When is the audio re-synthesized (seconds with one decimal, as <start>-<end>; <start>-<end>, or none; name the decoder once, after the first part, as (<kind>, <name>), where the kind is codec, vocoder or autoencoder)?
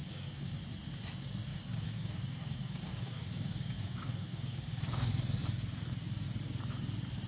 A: 0.0-0.6 (codec, DAC); 1.5-5.1